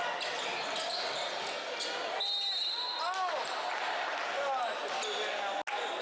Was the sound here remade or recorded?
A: recorded